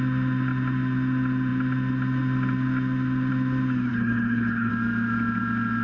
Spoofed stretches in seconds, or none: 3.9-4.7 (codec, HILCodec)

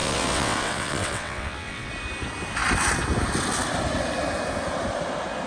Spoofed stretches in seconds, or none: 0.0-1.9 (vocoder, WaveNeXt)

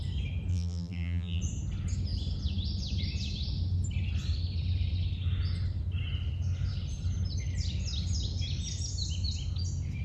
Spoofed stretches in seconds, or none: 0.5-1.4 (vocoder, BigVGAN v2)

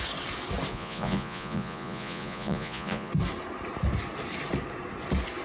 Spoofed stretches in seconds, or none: 0.7-3.1 (vocoder, Vocos)

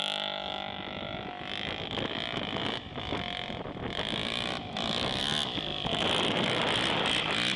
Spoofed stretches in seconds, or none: 4.2-5.2 (vocoder, BigVGAN v2)

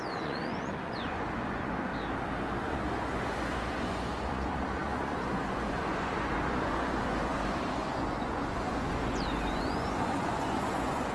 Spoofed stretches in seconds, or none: 0.0-1.9 (vocoder, Vocos); 2.4-11.1